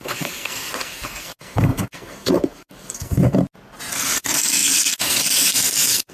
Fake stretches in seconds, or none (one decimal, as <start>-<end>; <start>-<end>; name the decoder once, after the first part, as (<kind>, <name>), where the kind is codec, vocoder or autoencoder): 0.0-3.4 (codec, SNAC); 4.0-6.1